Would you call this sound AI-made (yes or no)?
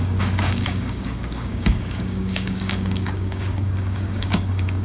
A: yes